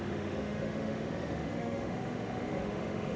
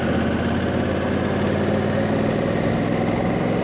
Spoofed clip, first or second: first